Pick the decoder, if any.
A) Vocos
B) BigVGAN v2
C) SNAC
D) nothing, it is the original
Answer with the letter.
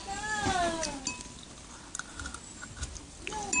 D